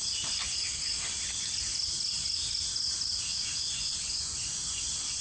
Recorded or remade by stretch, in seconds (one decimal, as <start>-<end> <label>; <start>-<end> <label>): 0.0-3.3 recorded; 3.3-5.2 remade